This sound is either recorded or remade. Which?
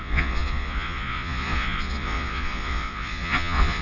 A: remade